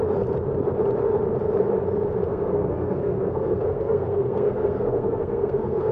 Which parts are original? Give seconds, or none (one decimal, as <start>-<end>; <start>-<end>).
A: 0.0-2.3